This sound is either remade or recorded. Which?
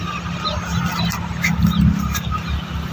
recorded